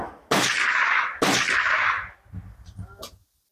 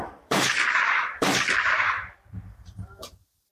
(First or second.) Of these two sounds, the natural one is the first